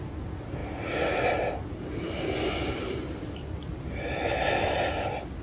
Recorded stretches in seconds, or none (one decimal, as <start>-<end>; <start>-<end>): 0.0-5.4